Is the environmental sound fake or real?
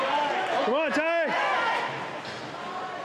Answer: real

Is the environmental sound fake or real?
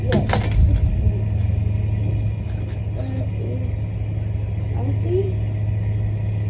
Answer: real